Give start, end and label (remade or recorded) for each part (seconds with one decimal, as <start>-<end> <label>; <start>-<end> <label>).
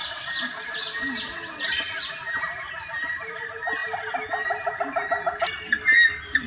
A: 0.0-6.5 recorded